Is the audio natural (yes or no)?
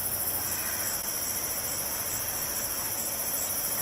yes